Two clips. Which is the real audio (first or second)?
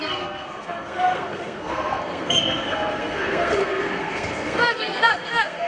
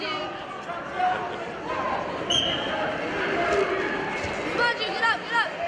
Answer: second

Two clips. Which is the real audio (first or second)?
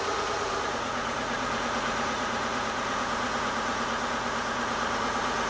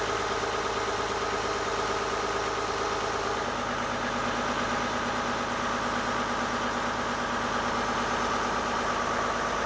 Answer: second